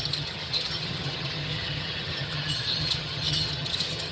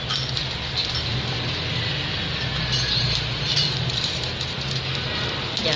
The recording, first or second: second